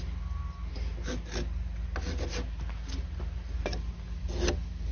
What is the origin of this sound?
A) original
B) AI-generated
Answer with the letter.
A